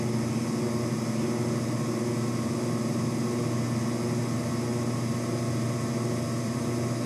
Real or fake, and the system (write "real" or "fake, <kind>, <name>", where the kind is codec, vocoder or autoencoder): real